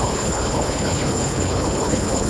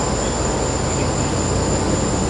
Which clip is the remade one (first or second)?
first